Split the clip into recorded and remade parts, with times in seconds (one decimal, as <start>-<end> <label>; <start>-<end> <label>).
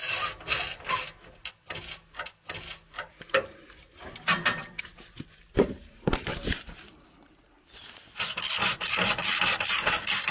0.0-3.1 recorded; 3.1-8.1 remade; 8.1-9.7 recorded; 9.7-10.3 remade